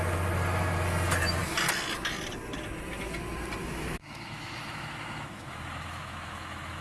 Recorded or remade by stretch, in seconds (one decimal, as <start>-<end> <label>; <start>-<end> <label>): 0.0-3.6 recorded; 3.6-6.8 remade